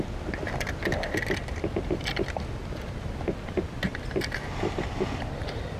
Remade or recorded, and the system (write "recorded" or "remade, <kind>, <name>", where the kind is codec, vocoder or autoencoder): recorded